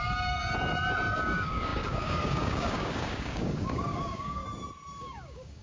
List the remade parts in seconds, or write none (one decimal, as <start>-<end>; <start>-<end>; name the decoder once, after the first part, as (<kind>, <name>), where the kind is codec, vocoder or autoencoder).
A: 0.0-0.4 (codec, DAC); 1.2-4.4; 5.0-5.6